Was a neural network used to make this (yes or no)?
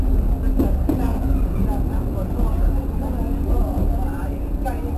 no